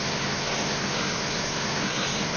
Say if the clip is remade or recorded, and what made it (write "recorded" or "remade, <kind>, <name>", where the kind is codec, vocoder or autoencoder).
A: remade, codec, SNAC